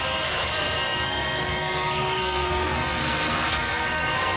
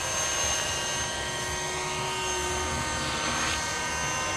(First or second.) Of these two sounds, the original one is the second